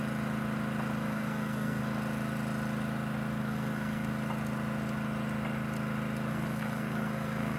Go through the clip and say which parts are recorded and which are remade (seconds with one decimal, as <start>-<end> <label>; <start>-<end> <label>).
0.0-1.0 recorded; 1.0-1.8 remade; 1.8-3.4 recorded; 3.4-4.1 remade; 4.1-6.3 recorded; 6.3-7.6 remade